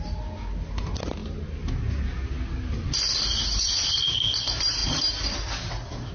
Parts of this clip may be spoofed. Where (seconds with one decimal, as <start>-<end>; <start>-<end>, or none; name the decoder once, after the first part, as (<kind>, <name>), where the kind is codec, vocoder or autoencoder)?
none